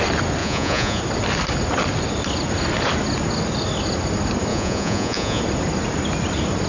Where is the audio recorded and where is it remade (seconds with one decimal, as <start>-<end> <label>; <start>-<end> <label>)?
0.0-0.4 recorded; 0.4-1.0 remade; 1.0-4.5 recorded; 4.5-5.4 remade; 5.4-6.7 recorded